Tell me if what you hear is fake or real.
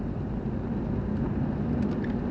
real